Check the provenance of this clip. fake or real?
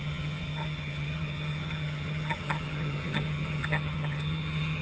fake